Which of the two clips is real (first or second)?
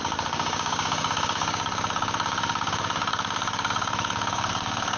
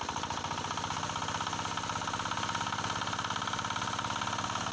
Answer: second